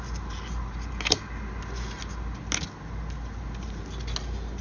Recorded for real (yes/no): yes